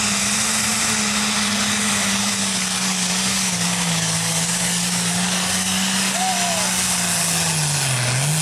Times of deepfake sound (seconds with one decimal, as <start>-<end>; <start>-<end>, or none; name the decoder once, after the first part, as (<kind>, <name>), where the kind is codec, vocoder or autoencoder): 2.2-6.2 (codec, DAC)